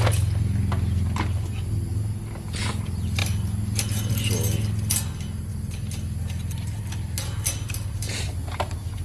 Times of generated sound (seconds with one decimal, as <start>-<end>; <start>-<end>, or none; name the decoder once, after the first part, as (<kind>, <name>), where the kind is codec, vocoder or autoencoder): none